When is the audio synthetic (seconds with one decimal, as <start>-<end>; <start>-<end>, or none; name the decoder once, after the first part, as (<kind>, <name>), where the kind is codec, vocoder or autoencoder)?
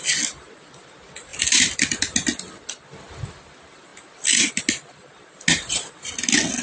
1.3-2.0 (vocoder, BigVGAN v2)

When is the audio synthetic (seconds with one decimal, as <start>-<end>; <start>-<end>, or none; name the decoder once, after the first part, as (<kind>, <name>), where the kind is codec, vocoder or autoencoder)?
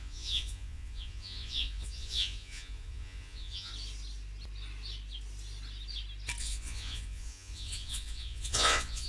0.0-3.7 (vocoder, Vocos); 6.4-9.1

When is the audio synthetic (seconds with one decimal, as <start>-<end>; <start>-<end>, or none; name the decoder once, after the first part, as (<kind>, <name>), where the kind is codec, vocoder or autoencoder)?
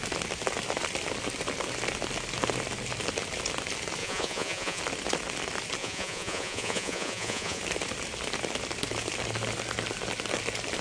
4.0-4.8 (vocoder, Vocos); 5.8-7.6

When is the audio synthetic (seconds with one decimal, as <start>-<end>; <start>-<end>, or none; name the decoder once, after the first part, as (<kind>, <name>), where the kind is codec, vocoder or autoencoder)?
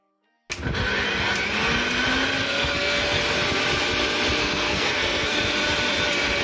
2.4-3.2 (codec, SNAC); 4.4-5.4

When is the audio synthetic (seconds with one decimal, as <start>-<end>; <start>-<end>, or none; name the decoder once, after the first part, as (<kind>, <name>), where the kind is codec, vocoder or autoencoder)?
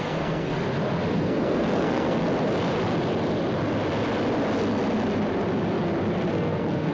0.0-0.5 (codec, SNAC); 1.1-2.2; 6.3-6.9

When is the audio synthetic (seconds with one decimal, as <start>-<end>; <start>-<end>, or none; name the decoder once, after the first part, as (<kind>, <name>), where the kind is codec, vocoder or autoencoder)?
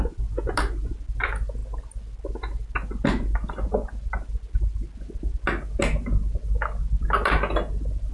none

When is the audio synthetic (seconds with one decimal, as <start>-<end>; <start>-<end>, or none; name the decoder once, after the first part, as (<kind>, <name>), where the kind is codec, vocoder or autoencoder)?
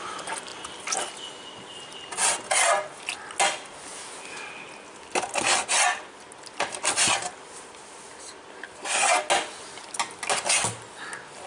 none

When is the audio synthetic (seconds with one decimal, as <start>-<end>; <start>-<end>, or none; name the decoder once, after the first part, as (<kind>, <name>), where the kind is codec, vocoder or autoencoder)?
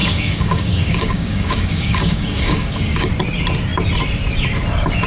0.0-3.1 (codec, DAC)